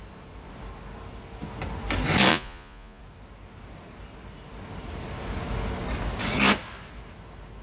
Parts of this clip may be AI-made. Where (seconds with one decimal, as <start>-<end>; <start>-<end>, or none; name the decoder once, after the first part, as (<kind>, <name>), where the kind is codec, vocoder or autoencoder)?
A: 2.3-3.0 (vocoder, Vocos)